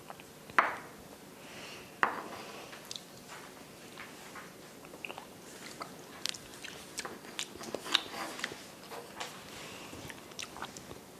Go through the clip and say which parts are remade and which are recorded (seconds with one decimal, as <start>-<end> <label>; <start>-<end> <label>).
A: 0.0-11.2 recorded

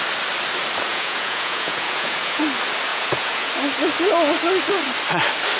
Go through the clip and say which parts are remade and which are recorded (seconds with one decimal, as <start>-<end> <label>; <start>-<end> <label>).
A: 0.0-0.9 recorded; 0.9-2.4 remade; 2.4-2.9 recorded; 2.9-3.5 remade; 3.5-5.6 recorded

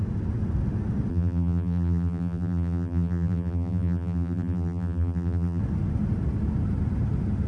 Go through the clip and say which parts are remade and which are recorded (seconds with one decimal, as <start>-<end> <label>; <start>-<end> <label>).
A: 0.0-1.1 recorded; 1.1-5.6 remade; 5.6-7.5 recorded

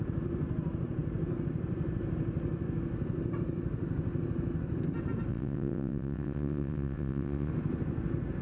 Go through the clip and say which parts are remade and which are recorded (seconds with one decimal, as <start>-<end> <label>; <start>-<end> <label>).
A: 0.0-5.3 recorded; 5.3-7.5 remade; 7.5-8.4 recorded

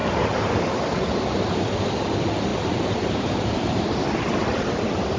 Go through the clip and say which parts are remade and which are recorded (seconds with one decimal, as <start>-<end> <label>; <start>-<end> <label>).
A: 0.0-0.6 remade; 0.6-2.5 recorded; 2.5-4.0 remade; 4.0-5.2 recorded